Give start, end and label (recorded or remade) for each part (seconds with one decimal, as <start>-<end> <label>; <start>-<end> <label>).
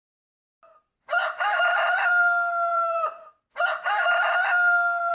0.0-1.2 recorded; 1.2-2.1 remade; 2.1-2.7 recorded; 2.7-3.4 remade; 3.4-5.1 recorded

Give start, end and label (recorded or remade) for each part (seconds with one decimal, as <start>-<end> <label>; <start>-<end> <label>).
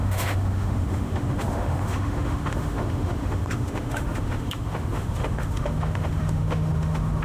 0.0-7.2 remade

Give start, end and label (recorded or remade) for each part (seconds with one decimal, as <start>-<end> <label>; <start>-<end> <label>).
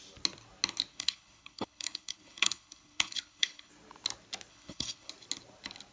0.0-0.9 recorded; 0.9-3.7 remade; 3.7-4.5 recorded; 4.5-5.1 remade; 5.1-5.9 recorded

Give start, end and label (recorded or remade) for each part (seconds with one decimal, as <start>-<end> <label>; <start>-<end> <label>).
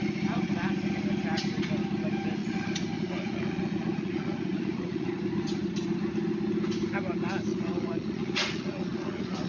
0.0-2.4 recorded; 2.4-5.1 remade; 5.1-7.5 recorded; 7.5-9.5 remade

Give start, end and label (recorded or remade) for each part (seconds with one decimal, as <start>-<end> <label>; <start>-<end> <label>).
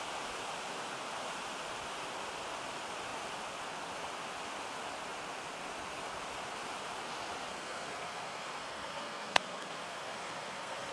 0.0-7.5 recorded; 7.5-10.9 remade